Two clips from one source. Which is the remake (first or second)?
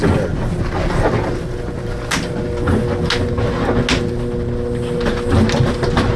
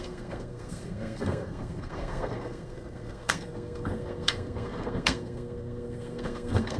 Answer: second